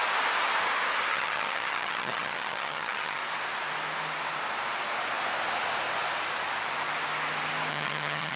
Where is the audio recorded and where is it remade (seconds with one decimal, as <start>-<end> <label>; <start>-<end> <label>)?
0.0-1.1 recorded; 1.1-3.2 remade; 3.2-7.7 recorded; 7.7-8.4 remade